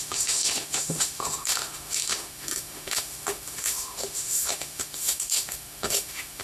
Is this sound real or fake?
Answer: fake